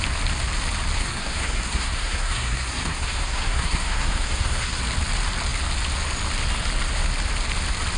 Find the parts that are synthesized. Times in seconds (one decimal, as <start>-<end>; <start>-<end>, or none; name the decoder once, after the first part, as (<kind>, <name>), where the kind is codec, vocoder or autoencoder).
1.0-4.8 (codec, SNAC)